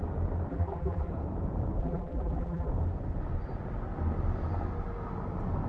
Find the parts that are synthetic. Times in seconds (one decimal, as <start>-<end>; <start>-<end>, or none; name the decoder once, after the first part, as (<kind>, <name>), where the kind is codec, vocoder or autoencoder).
0.5-1.1 (vocoder, BigVGAN v2); 1.8-2.7